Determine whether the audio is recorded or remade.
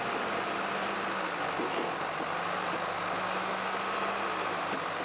recorded